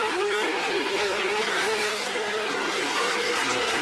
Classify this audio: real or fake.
fake